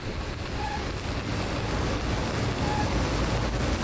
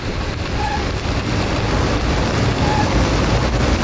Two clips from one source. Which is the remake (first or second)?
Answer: second